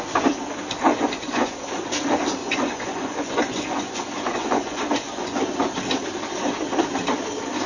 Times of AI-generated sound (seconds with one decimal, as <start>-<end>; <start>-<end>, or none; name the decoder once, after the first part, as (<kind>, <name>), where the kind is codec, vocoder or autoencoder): 0.8-1.6 (vocoder, Vocos); 2.4-5.4